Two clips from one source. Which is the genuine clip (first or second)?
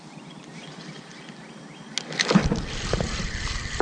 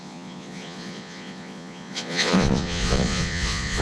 first